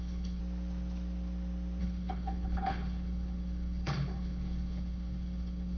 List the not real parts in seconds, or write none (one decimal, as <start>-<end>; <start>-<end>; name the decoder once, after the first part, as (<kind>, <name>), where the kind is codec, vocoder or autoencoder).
0.0-0.4 (codec, HILCodec); 1.8-5.8

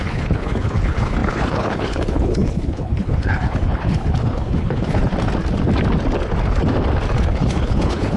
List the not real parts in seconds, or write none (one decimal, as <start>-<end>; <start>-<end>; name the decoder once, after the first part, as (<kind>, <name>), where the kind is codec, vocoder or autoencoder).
0.0-5.0 (codec, HILCodec); 7.2-8.2

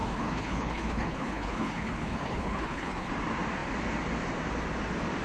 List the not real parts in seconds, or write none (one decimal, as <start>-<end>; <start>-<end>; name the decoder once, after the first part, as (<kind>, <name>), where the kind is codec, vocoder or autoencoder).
0.0-3.1 (codec, HILCodec)